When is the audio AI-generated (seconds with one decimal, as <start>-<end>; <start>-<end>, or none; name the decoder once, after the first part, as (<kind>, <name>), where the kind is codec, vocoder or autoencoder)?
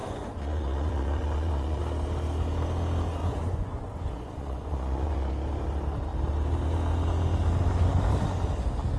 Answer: 0.0-1.8 (vocoder, Vocos); 3.2-5.3